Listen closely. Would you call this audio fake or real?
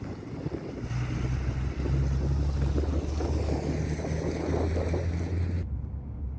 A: real